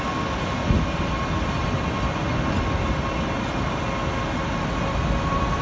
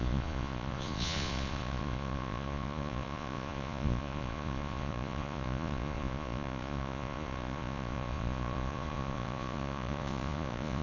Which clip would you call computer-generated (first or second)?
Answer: second